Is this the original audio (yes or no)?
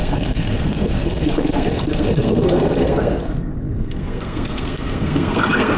no